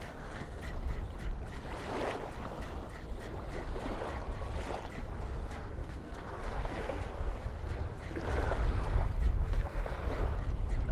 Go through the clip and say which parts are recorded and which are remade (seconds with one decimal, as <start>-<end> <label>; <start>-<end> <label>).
0.0-0.6 remade; 0.6-5.2 recorded; 5.2-7.6 remade; 7.6-9.4 recorded; 9.4-10.0 remade; 10.0-10.9 recorded